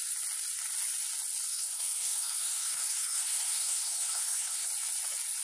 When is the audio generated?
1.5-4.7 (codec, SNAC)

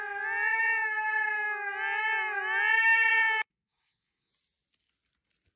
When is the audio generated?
0.5-1.7 (codec, DAC); 3.1-4.3

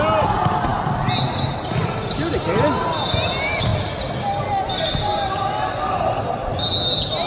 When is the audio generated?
none